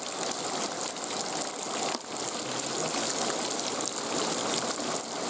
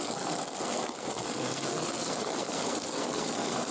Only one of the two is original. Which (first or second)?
first